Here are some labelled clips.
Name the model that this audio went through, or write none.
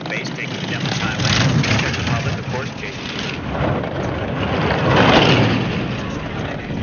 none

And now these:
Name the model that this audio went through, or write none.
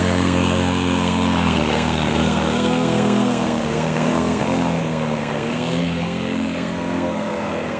codec, SNAC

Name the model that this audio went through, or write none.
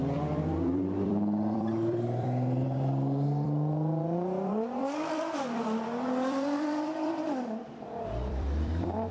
vocoder, BigVGAN v2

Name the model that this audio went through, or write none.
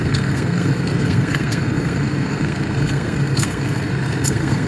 codec, SNAC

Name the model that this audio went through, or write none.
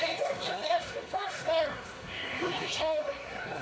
codec, SNAC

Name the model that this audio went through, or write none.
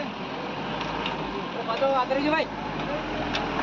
none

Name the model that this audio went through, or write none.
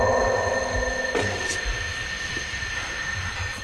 none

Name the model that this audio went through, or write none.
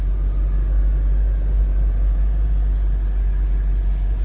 none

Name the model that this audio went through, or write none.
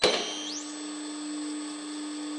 none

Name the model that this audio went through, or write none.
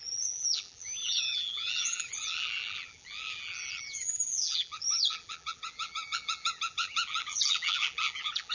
vocoder, BigVGAN v2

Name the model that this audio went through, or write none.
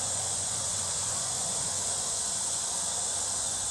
vocoder, Vocos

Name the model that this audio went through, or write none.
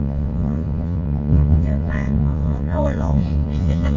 vocoder, WaveNeXt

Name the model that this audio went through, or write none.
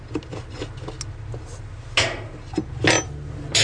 none